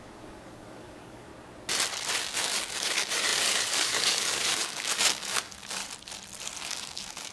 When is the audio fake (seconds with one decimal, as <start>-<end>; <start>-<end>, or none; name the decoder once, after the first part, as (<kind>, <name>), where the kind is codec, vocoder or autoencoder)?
0.0-1.3 (codec, DAC); 2.2-5.8; 6.6-7.3